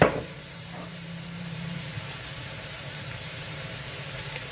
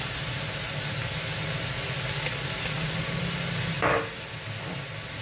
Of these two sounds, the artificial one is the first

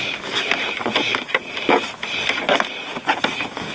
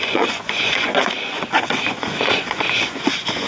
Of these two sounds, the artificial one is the second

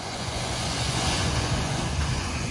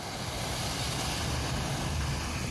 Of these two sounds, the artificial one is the first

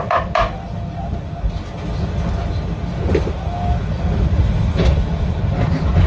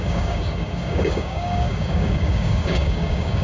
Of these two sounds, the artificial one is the second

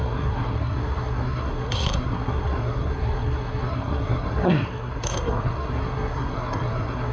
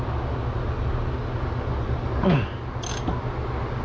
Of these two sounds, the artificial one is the first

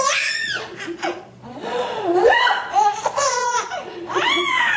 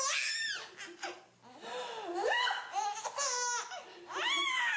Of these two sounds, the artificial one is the first